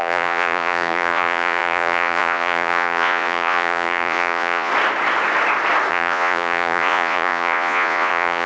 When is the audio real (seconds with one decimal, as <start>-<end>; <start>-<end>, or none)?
4.7-5.9